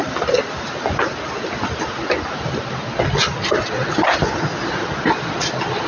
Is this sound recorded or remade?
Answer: recorded